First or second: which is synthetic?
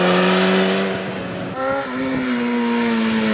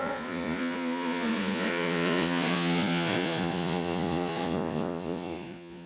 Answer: second